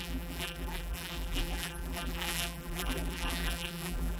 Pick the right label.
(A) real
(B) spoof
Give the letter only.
B